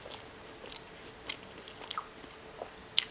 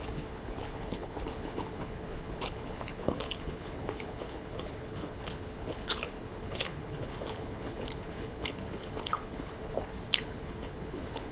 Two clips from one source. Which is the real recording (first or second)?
first